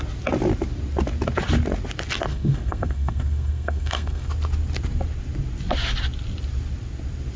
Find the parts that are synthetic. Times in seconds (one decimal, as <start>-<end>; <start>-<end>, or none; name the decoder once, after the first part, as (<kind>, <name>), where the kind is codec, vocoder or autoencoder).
2.3-4.3 (codec, SNAC)